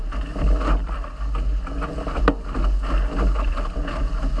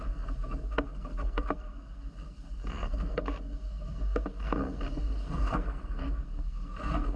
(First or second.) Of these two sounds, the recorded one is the first